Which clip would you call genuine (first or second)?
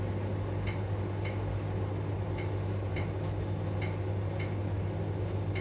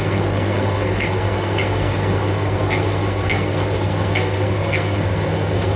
first